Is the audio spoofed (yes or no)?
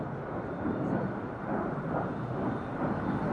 no